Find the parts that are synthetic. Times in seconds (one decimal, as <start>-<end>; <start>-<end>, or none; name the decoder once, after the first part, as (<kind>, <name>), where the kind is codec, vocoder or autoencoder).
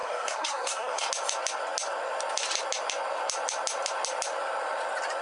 0.0-1.1 (codec, SNAC)